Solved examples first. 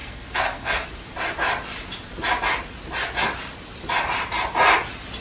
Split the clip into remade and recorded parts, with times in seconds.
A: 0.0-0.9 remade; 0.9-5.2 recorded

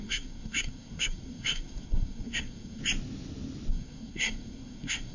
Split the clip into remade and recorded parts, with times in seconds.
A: 0.0-2.8 remade; 2.8-3.7 recorded; 3.7-5.1 remade

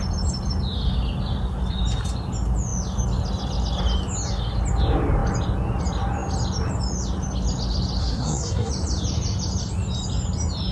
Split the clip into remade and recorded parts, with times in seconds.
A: 0.0-8.0 recorded; 8.0-8.7 remade; 8.7-10.7 recorded

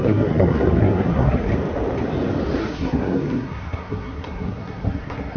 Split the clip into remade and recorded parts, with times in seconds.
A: 0.0-1.5 remade; 1.5-2.6 recorded; 2.6-5.4 remade

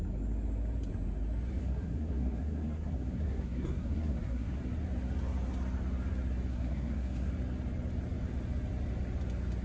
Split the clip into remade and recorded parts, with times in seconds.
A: 0.0-1.6 recorded; 1.6-4.6 remade; 4.6-6.5 recorded; 6.5-7.3 remade; 7.3-9.6 recorded